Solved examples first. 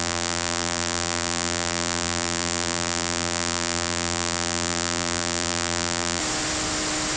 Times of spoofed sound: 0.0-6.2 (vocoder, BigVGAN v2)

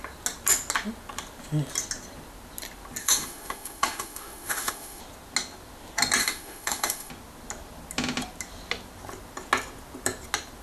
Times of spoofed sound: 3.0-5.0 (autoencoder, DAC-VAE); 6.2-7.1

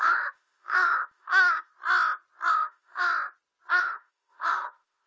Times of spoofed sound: 0.0-1.7 (autoencoder, DAC-VAE); 2.5-3.1; 3.7-5.1

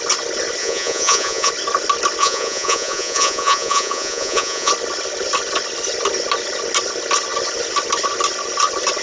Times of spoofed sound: 0.6-1.5 (vocoder, Vocos); 2.2-4.7

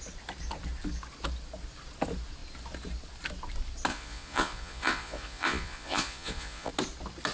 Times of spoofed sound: 3.9-6.7 (vocoder, Vocos)